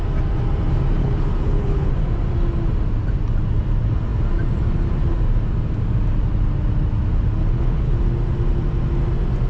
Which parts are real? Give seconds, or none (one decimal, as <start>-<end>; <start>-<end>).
0.0-1.0; 1.9-7.4; 7.9-9.5